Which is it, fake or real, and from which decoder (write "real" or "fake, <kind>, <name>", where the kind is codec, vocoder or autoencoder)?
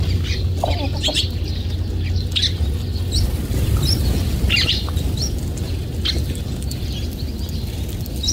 real